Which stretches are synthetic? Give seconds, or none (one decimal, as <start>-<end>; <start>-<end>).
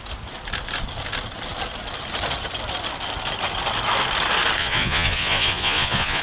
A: 4.6-6.2